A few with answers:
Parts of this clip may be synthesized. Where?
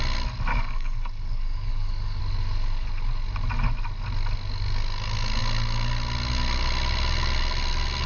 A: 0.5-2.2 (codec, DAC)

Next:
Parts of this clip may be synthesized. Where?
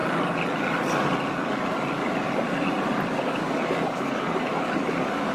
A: 3.2-5.3 (codec, DAC)